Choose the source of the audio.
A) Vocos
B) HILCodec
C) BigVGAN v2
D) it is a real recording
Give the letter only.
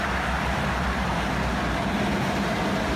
D